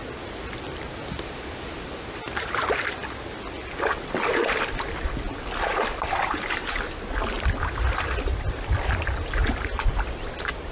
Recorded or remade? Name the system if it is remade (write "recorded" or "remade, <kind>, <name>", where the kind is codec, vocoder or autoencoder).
recorded